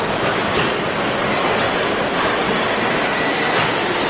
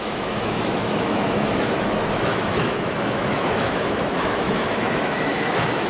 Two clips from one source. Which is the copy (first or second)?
second